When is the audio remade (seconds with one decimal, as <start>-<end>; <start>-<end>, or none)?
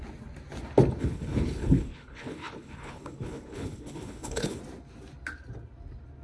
1.0-4.6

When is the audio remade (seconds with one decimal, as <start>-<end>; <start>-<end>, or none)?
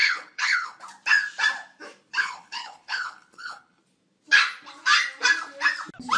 0.0-0.8; 2.2-3.8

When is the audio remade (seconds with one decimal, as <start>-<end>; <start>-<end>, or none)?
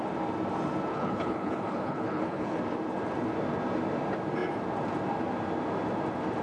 0.9-2.6